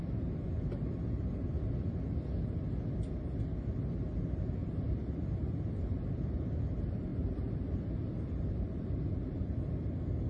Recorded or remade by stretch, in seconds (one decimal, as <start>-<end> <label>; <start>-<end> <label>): 0.0-4.6 recorded; 4.6-6.1 remade; 6.1-7.1 recorded; 7.1-9.6 remade; 9.6-10.3 recorded